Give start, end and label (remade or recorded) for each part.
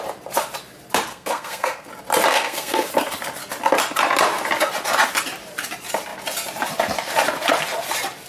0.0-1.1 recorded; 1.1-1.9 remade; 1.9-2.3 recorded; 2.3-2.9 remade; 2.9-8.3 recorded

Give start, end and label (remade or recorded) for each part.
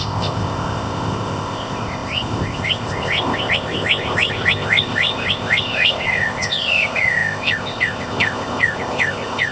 0.0-9.5 remade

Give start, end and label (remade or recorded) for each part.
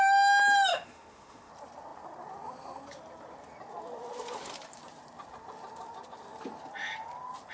0.0-0.7 recorded; 0.7-1.5 remade; 1.5-7.5 recorded